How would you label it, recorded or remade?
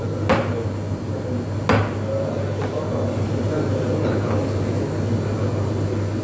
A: recorded